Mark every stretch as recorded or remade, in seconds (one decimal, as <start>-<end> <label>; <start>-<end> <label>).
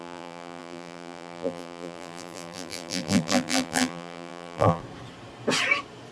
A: 0.0-4.8 remade; 4.8-6.1 recorded